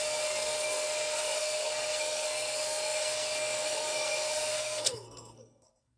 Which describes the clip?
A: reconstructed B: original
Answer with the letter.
A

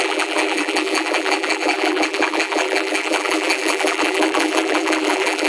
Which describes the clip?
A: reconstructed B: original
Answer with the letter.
A